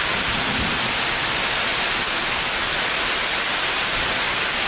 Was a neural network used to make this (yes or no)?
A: no